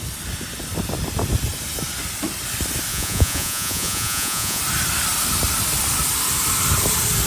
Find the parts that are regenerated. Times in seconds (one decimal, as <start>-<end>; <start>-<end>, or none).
2.9-4.6